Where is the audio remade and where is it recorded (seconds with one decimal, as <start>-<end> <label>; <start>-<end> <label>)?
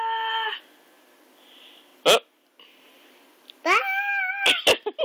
0.0-5.0 recorded